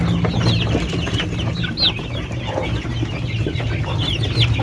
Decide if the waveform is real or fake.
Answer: real